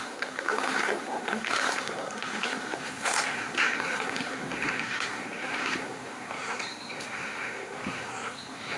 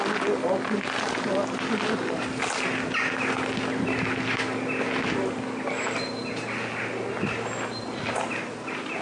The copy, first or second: first